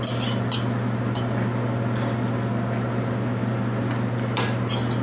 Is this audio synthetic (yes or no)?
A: no